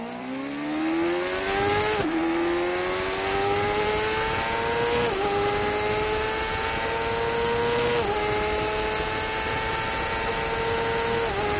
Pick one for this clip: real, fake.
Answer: real